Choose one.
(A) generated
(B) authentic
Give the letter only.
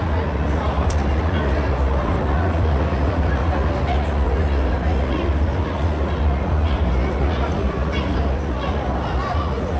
A